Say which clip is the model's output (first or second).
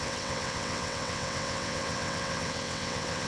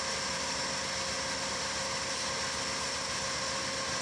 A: first